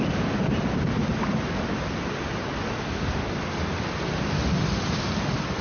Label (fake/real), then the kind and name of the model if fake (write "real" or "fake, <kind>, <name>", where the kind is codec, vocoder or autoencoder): real